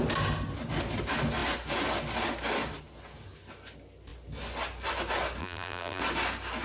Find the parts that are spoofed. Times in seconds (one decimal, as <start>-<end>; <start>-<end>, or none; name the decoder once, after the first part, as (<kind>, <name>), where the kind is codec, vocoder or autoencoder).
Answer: 5.4-6.0 (vocoder, BigVGAN v2)